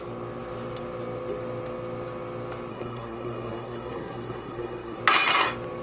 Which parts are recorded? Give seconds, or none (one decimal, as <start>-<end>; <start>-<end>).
0.0-2.7; 5.0-5.8